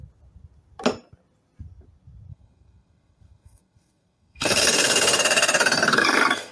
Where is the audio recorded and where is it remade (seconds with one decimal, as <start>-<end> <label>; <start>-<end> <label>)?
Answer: 0.0-2.3 recorded; 2.3-6.5 remade